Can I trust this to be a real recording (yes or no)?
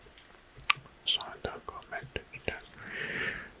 yes